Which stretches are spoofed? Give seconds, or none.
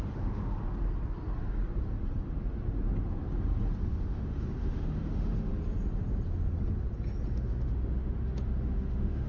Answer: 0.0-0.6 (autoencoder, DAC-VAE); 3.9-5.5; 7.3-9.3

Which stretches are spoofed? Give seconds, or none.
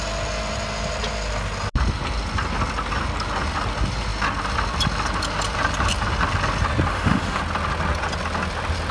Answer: 6.9-7.4 (autoencoder, DAC-VAE)